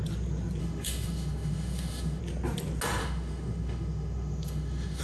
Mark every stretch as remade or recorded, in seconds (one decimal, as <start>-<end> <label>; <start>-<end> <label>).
0.0-0.6 recorded; 0.6-2.2 remade; 2.2-3.0 recorded; 3.0-5.0 remade